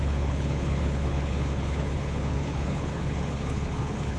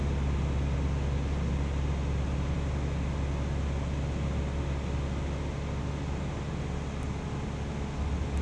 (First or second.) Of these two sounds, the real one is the second